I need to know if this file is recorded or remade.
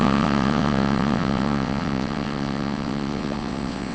remade